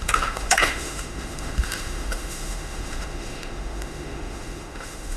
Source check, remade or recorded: remade